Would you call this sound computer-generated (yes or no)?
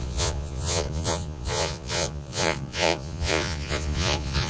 yes